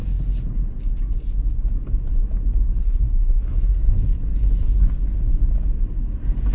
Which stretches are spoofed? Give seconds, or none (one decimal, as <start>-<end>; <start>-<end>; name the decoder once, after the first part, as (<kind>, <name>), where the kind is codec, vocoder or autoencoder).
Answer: 2.8-3.9 (codec, SNAC)